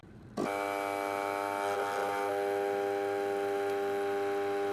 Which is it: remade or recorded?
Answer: recorded